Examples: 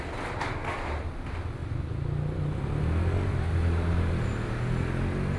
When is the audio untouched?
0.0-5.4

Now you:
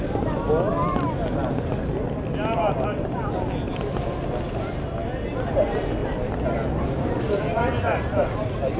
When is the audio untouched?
0.0-8.8

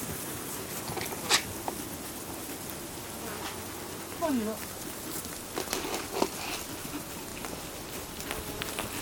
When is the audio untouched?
0.0-7.3; 8.5-9.0

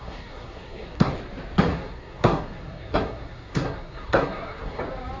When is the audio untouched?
1.1-1.7; 4.8-5.2

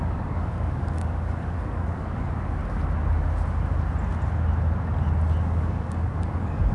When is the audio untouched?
2.6-5.4